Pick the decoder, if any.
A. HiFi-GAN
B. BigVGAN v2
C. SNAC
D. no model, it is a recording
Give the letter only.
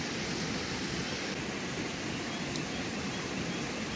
D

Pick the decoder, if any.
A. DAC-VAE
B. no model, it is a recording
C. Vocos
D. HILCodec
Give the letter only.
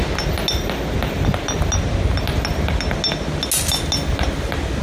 B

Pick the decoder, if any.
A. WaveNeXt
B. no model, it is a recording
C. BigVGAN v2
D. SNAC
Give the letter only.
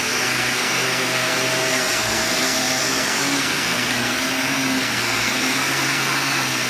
D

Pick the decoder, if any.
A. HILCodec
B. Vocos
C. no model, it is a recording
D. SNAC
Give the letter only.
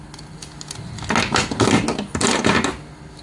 C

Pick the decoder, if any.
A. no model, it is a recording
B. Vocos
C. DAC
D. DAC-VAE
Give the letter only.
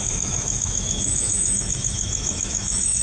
D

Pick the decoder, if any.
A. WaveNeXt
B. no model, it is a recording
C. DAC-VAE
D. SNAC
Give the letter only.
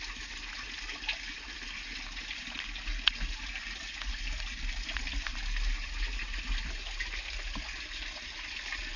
B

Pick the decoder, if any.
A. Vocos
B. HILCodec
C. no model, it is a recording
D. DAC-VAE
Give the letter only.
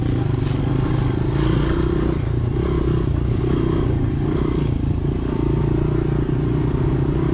C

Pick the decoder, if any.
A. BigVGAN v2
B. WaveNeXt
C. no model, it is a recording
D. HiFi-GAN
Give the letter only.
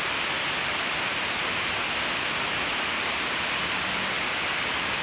C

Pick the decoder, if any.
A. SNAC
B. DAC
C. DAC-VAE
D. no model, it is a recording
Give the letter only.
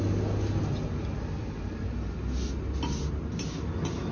D